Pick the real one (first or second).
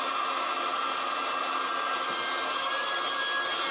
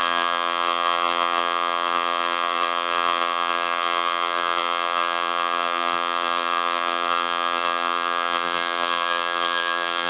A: first